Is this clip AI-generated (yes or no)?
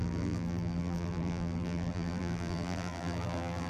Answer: yes